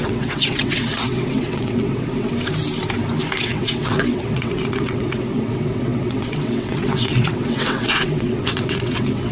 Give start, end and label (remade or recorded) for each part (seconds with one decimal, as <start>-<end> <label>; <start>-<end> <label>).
0.0-2.3 remade; 2.3-3.4 recorded; 3.4-9.3 remade